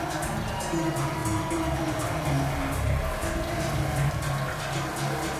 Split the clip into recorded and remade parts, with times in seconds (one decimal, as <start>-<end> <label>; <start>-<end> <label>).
0.0-5.4 recorded